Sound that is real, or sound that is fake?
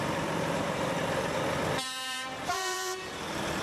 fake